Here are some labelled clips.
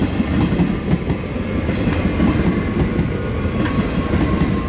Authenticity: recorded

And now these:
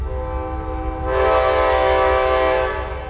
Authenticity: recorded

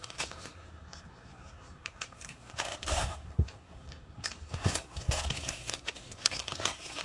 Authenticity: remade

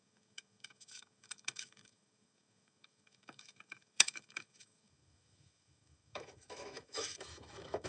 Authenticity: remade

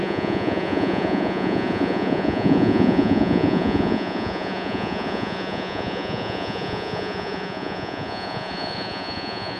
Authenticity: remade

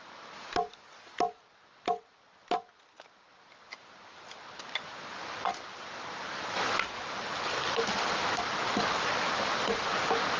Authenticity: recorded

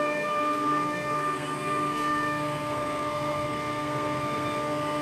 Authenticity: remade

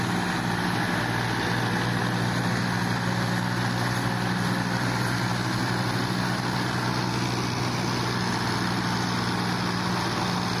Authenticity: recorded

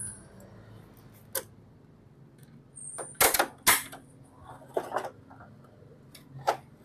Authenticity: recorded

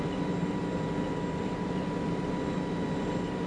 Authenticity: recorded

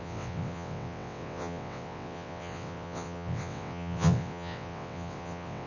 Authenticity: remade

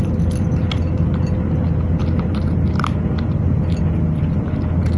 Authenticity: recorded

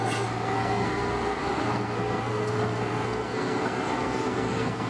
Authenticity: remade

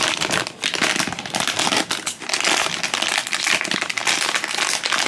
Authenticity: recorded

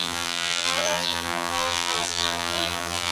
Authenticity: remade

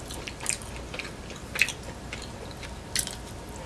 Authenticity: recorded